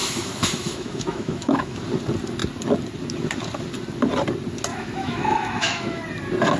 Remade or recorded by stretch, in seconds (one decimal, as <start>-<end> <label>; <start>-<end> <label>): 0.0-1.8 remade; 1.8-4.7 recorded; 4.7-6.0 remade; 6.0-6.6 recorded